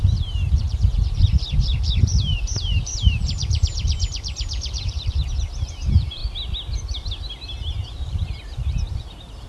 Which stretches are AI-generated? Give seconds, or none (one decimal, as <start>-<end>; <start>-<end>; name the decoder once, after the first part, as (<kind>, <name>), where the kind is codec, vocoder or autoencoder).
0.0-6.2 (vocoder, BigVGAN v2); 8.0-9.5